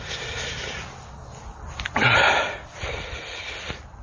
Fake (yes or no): no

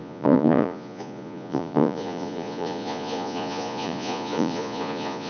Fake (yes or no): yes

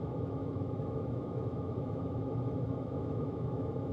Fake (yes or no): yes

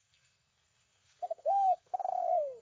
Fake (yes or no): yes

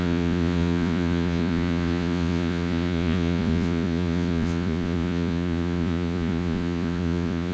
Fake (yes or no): yes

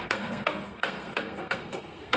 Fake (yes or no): yes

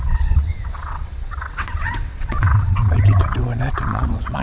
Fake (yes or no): yes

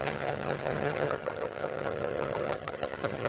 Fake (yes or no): yes